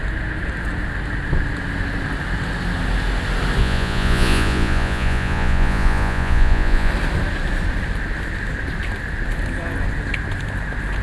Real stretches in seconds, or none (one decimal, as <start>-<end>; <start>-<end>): 0.0-3.6; 6.9-11.0